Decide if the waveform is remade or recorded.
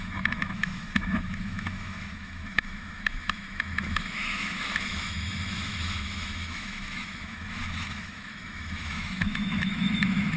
remade